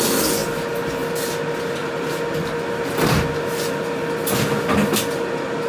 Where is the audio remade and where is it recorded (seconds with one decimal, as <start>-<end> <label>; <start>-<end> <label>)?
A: 0.0-5.7 recorded